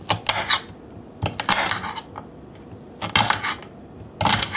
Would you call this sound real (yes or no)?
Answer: yes